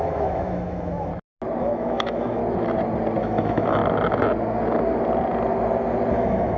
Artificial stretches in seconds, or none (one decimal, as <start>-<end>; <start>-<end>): 0.0-1.1; 1.6-2.4; 3.2-3.8; 6.1-6.6